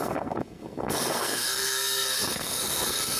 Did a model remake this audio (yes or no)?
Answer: yes